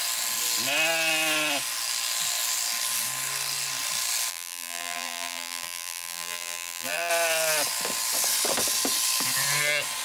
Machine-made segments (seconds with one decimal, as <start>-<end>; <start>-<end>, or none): 4.3-7.1